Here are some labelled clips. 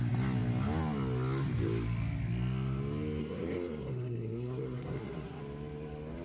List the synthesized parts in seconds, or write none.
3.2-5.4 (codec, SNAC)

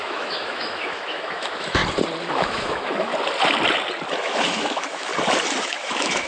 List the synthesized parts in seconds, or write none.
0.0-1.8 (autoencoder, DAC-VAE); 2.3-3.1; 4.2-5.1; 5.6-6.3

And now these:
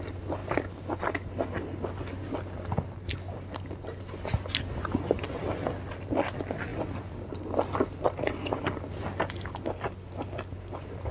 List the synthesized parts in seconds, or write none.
none